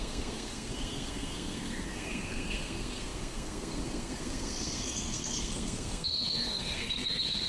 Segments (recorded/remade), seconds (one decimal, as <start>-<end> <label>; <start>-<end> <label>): 0.0-7.5 remade